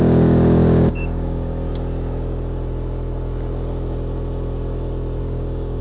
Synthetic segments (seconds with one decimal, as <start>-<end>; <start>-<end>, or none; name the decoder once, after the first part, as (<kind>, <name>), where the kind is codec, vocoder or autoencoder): 0.0-1.7 (codec, DAC); 5.2-5.8